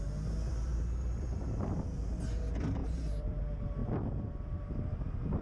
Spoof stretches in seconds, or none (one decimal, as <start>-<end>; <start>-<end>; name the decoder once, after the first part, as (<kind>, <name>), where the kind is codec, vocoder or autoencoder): 0.5-2.4 (vocoder, BigVGAN v2); 2.8-3.4